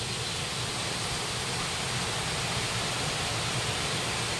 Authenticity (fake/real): real